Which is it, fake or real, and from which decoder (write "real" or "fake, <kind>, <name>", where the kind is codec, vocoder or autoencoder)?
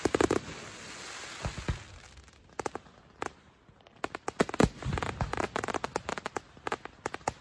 real